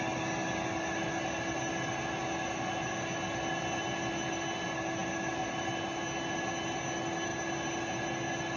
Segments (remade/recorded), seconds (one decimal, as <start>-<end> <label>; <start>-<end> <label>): 0.0-8.6 recorded